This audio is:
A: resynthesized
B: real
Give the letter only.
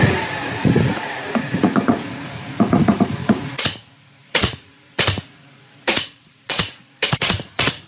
A